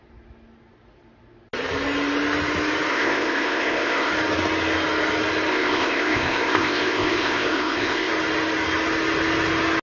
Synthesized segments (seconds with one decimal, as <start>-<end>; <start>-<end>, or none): 2.9-4.1; 5.5-8.1